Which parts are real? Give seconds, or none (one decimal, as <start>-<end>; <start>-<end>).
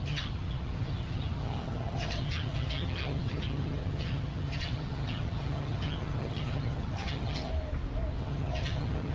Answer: 7.5-8.2